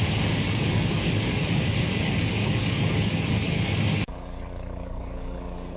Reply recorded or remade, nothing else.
remade